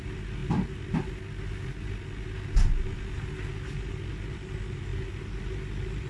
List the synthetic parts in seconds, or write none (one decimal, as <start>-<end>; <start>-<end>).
none